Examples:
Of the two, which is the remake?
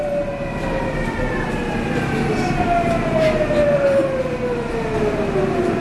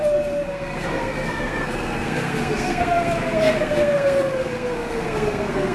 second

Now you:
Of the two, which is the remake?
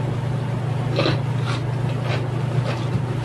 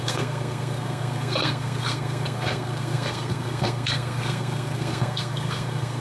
second